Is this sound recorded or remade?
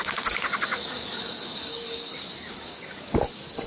remade